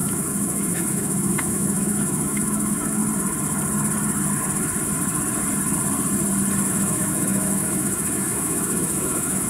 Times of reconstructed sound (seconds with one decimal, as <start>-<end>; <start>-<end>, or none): 0.0-3.0; 6.7-9.5